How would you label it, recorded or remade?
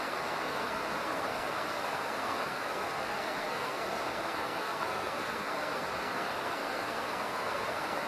remade